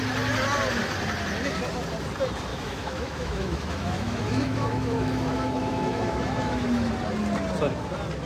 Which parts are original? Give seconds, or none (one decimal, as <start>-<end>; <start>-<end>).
0.0-2.5; 6.9-8.3